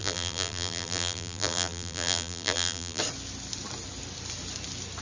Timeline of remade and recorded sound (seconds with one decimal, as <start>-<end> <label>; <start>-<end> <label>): 0.0-3.0 remade; 3.0-5.0 recorded